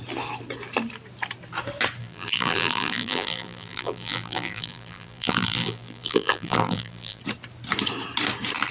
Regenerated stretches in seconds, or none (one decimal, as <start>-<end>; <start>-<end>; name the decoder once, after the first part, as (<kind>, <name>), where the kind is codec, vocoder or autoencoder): 2.0-7.2 (vocoder, BigVGAN v2)